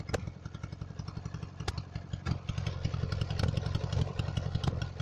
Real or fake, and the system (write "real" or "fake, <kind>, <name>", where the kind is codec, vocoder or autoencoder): real